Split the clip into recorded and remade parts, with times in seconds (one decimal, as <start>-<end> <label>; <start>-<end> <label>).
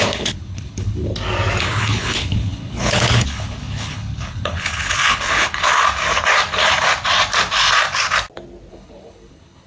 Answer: 0.0-1.1 remade; 1.1-1.6 recorded; 1.6-5.7 remade; 5.7-8.7 recorded; 8.7-9.7 remade